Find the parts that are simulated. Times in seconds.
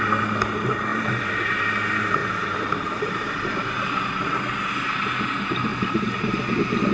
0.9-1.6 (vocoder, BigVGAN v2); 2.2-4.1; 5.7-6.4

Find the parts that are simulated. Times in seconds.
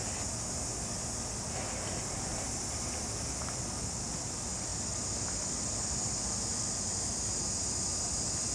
none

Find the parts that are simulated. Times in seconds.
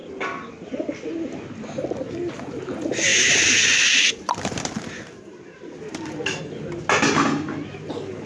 3.1-6.4 (vocoder, BigVGAN v2)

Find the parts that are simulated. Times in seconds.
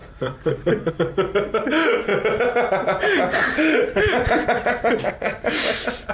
0.0-0.9 (vocoder, BigVGAN v2); 5.3-6.1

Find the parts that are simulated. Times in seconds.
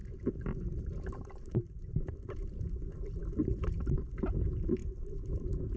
0.0-2.6 (vocoder, BigVGAN v2); 4.8-5.8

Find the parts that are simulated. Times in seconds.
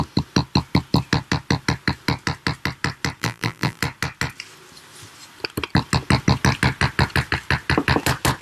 3.2-3.8 (vocoder, BigVGAN v2)